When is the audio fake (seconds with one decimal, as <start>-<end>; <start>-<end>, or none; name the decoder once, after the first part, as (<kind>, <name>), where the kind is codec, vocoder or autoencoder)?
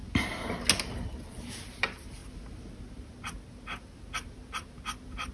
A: none